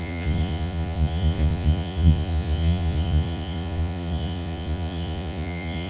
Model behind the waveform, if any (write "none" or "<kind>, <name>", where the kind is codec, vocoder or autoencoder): vocoder, Vocos